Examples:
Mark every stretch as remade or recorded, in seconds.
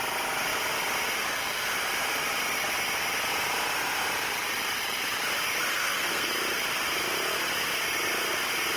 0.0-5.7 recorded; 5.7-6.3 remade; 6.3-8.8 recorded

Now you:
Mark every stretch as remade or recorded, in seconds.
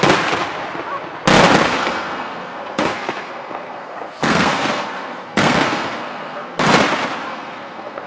0.0-1.8 recorded; 1.8-6.7 remade; 6.7-7.3 recorded; 7.3-8.1 remade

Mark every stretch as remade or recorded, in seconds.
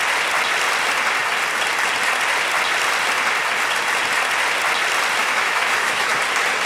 0.0-5.2 recorded; 5.2-6.1 remade; 6.1-6.7 recorded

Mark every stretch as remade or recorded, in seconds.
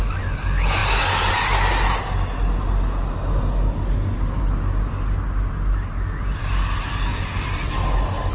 0.0-7.1 recorded; 7.1-8.3 remade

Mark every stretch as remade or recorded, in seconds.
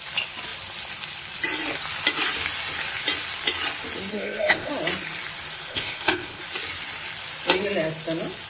0.0-4.1 recorded; 4.1-4.7 remade; 4.7-5.7 recorded; 5.7-6.4 remade; 6.4-8.5 recorded